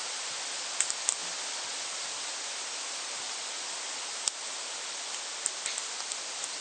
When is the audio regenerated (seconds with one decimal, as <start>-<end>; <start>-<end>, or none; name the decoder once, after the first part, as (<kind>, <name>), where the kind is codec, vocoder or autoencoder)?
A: none